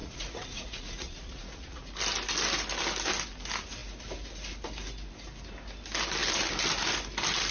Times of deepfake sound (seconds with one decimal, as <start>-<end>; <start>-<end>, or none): 0.0-1.9